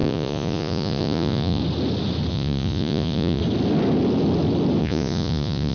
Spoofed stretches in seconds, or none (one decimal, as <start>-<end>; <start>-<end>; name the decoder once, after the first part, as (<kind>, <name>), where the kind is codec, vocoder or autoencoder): 0.0-1.6 (vocoder, Vocos); 2.3-3.4; 4.8-5.7